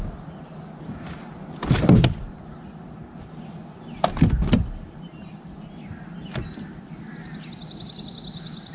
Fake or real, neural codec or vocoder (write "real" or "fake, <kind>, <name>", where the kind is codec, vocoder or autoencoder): real